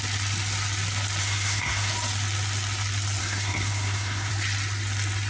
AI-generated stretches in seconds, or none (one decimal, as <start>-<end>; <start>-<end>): 1.2-1.9; 3.2-4.3